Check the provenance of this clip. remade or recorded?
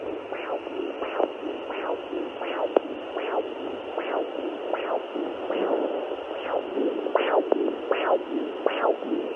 recorded